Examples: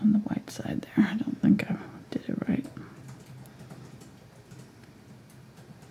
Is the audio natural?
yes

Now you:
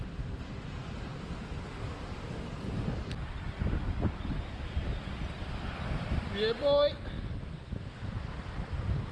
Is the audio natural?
yes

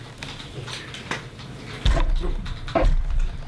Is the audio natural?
yes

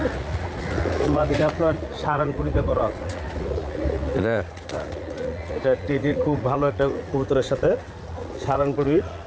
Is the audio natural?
no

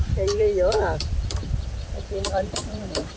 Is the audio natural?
no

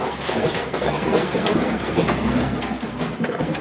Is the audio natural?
no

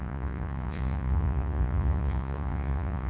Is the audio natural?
no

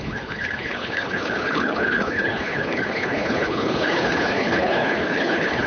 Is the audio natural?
no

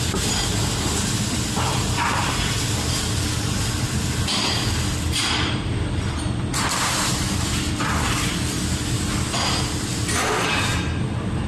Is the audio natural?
yes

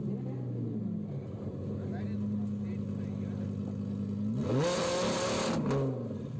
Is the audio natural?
yes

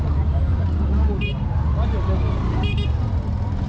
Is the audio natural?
yes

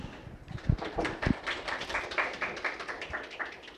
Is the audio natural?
yes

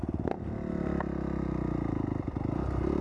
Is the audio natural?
yes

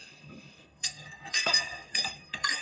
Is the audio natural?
no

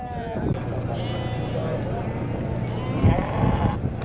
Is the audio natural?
yes